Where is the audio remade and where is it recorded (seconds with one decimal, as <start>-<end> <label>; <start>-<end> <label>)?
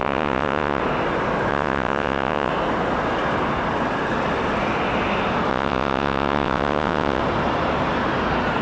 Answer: 0.0-0.8 remade; 0.8-1.5 recorded; 1.5-2.5 remade; 2.5-5.5 recorded; 5.5-7.2 remade; 7.2-8.6 recorded